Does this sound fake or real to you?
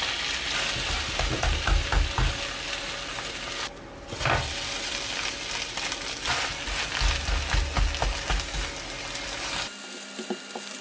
real